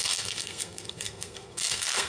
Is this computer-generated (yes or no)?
yes